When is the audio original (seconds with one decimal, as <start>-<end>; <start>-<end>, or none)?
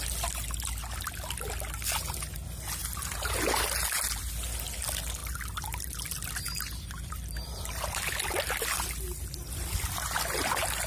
0.0-5.2; 9.7-10.9